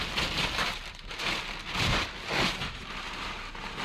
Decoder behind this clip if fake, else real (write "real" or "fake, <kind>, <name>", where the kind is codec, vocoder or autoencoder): real